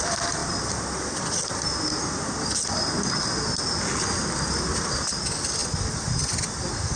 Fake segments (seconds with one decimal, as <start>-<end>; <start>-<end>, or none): none